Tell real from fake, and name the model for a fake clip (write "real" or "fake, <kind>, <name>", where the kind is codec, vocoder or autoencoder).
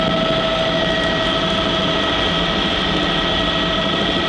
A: real